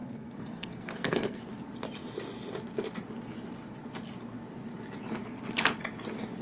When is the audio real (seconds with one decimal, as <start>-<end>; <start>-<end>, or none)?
1.4-6.4

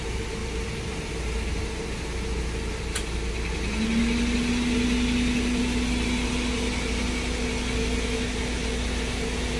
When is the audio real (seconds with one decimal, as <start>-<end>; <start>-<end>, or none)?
0.0-9.6

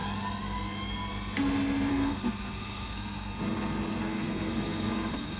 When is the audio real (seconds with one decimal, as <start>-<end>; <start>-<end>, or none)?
0.0-1.9; 3.3-4.0